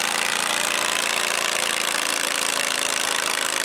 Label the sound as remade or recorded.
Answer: recorded